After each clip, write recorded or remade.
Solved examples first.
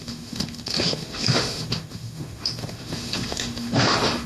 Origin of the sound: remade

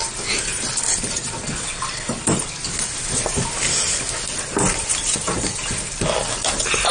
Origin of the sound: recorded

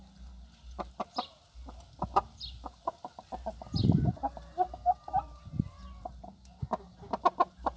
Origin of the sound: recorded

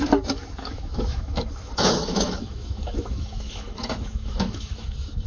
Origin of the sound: remade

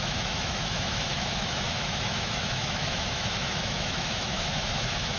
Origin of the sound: remade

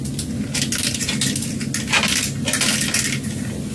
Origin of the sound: recorded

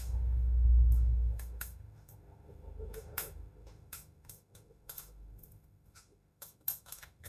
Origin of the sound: remade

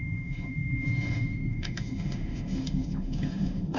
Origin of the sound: remade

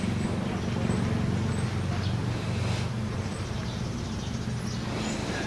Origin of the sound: recorded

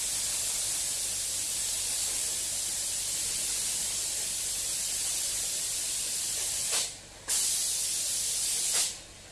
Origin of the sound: recorded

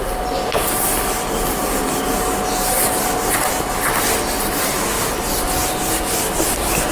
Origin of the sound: recorded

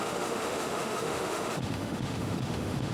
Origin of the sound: remade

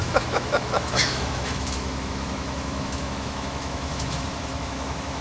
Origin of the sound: remade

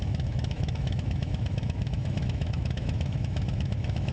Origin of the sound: remade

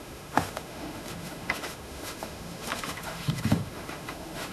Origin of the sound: remade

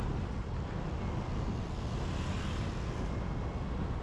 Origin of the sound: recorded